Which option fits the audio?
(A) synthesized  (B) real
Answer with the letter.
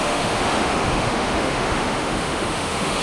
A